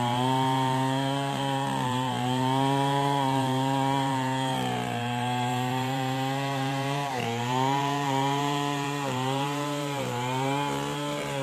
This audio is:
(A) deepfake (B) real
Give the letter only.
A